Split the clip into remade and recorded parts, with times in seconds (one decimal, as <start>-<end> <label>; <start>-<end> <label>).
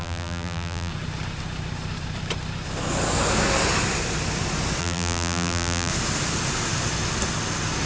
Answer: 0.0-0.9 remade; 0.9-4.8 recorded; 4.8-5.9 remade; 5.9-7.9 recorded